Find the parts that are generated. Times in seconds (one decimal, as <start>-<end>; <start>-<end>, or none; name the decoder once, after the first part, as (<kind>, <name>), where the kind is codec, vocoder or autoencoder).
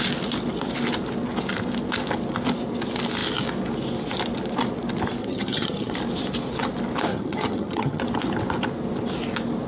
5.2-5.9 (vocoder, HiFi-GAN); 7.1-8.0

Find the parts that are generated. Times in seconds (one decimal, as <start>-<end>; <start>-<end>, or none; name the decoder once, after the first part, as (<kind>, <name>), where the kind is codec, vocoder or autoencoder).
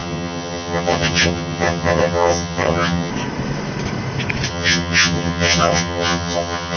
0.0-3.1 (vocoder, HiFi-GAN); 4.5-6.8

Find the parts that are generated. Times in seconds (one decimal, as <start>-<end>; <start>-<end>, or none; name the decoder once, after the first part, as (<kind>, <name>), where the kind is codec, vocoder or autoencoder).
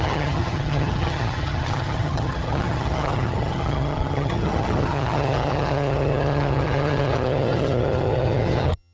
0.0-8.9 (vocoder, HiFi-GAN)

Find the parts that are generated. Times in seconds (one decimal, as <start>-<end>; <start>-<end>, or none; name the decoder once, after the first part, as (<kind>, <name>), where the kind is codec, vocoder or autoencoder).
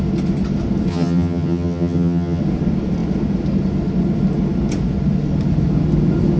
0.9-2.4 (vocoder, HiFi-GAN)